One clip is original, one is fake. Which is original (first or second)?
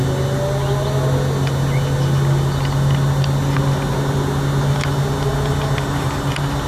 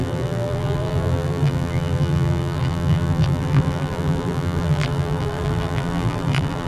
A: first